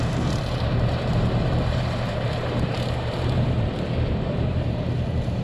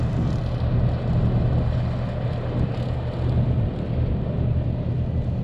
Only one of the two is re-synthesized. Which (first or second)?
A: first